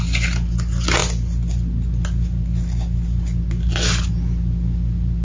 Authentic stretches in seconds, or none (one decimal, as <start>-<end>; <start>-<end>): 0.0-5.2

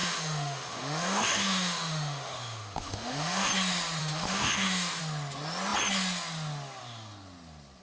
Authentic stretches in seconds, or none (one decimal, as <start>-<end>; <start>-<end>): 3.5-4.0; 5.0-7.8